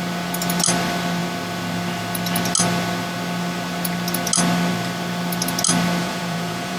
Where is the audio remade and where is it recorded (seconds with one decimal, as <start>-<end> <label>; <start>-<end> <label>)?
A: 0.0-6.0 recorded; 6.0-6.8 remade